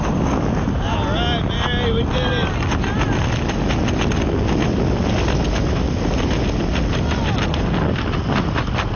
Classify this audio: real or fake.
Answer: real